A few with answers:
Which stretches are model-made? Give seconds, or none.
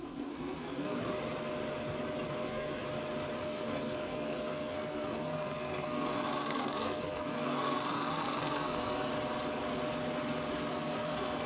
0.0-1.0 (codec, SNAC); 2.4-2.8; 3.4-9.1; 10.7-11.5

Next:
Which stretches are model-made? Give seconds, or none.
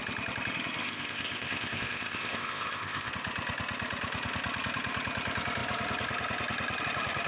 0.8-3.1 (codec, ZipCodec)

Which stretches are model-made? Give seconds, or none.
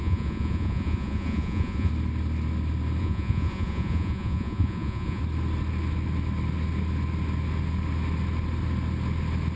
0.0-1.9 (vocoder, Vocos); 3.0-5.2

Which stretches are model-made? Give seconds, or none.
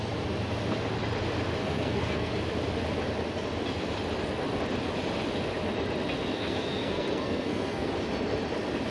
1.6-2.3 (codec, SNAC); 6.3-7.9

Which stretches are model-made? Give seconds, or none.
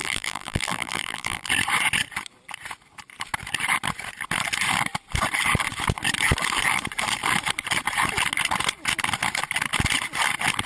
0.0-1.5 (vocoder, BigVGAN v2)